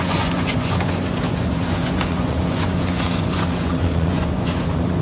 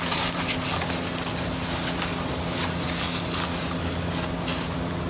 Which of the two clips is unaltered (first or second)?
second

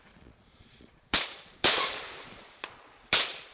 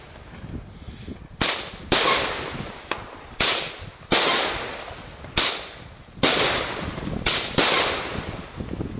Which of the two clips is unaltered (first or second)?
second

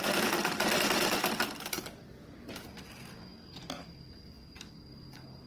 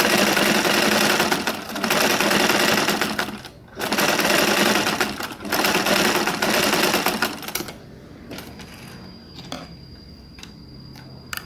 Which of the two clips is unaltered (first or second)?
second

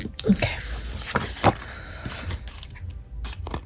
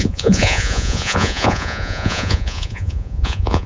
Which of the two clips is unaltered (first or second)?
first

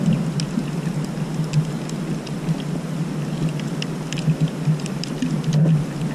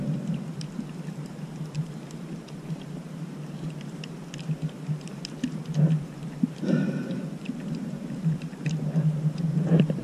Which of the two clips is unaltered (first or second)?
first